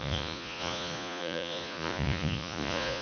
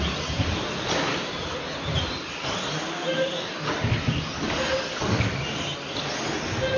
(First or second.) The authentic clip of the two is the second